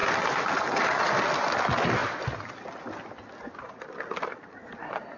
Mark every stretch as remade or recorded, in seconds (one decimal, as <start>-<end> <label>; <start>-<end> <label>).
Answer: 0.0-5.2 recorded